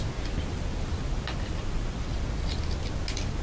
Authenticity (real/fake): real